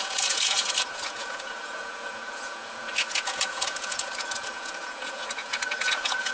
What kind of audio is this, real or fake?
fake